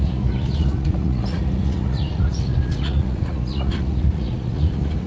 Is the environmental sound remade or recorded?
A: remade